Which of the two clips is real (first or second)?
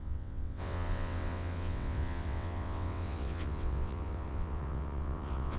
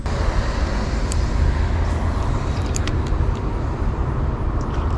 second